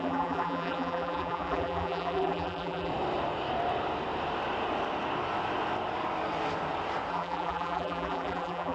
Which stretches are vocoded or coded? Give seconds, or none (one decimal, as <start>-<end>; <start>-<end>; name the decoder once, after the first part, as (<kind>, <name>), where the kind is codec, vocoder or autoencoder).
0.0-2.9 (vocoder, BigVGAN v2); 7.1-8.7